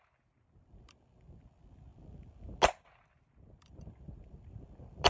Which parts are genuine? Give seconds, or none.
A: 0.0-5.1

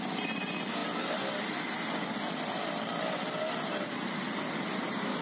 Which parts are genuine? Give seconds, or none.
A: 0.0-5.2

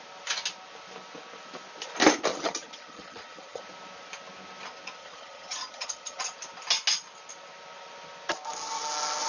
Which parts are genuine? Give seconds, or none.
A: 0.0-2.3; 3.6-5.0; 6.2-9.3

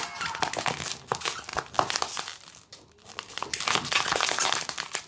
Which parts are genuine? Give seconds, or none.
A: 0.0-5.1